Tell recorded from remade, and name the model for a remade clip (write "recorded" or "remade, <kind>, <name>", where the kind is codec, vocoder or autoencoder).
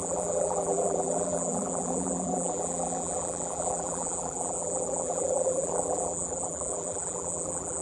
remade, vocoder, BigVGAN v2